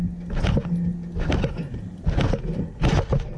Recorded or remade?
recorded